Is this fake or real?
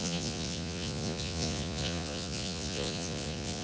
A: fake